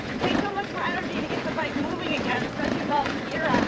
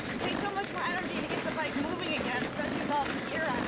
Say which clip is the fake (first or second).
first